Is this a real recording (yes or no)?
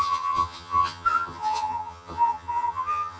no